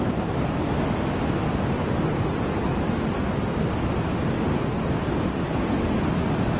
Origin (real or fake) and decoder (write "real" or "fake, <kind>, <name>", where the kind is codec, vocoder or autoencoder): real